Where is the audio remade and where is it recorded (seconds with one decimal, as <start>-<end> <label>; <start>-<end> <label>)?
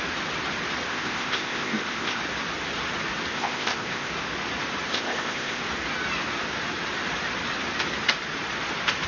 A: 0.0-0.9 recorded; 0.9-2.2 remade; 2.2-3.3 recorded; 3.3-4.1 remade; 4.1-4.9 recorded; 4.9-5.6 remade; 5.6-9.1 recorded